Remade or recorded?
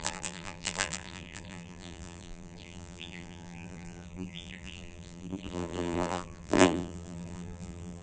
remade